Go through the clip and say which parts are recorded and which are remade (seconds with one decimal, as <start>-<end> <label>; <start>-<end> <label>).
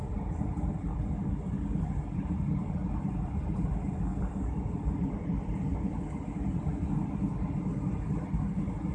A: 0.0-8.9 recorded